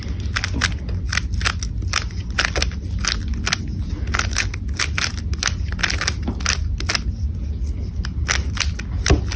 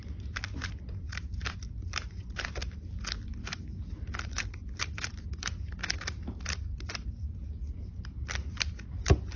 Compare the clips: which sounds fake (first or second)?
second